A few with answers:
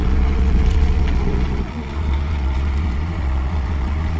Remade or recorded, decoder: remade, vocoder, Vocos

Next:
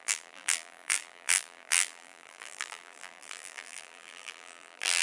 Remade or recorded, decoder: remade, vocoder, BigVGAN v2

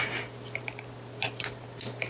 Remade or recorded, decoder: recorded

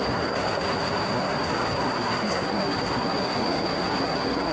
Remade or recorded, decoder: remade, codec, SNAC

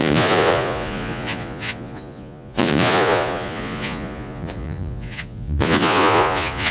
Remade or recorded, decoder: remade, vocoder, Vocos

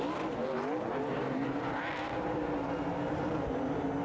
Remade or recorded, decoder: recorded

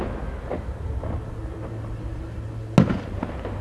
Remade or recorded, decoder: recorded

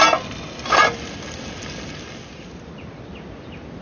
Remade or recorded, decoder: recorded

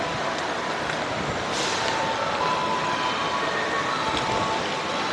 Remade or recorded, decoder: recorded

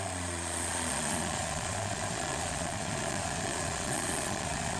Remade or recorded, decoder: remade, vocoder, Vocos